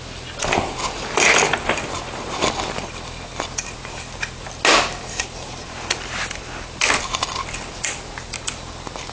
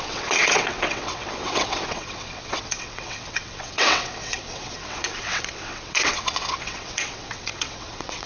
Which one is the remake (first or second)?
second